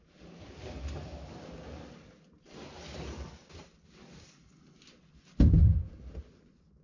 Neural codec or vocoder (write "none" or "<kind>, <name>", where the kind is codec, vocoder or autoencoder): none